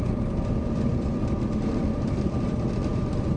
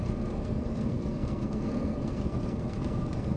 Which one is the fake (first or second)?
second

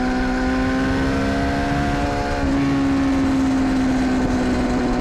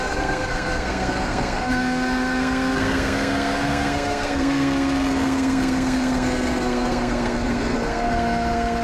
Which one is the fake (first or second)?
second